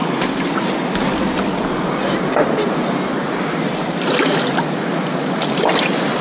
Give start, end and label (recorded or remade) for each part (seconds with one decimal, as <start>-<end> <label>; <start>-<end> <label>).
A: 0.0-6.2 recorded